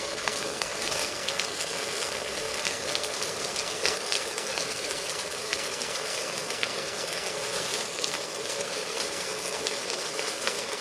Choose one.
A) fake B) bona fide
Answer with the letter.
A